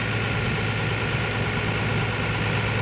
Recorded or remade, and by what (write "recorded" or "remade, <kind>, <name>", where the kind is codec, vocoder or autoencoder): recorded